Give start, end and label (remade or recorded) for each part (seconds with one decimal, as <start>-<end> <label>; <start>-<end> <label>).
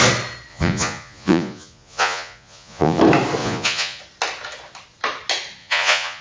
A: 0.0-0.5 recorded; 0.5-3.0 remade; 3.0-3.4 recorded; 3.4-4.0 remade; 4.0-5.6 recorded; 5.6-6.2 remade